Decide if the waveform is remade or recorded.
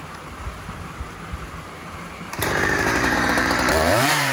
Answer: remade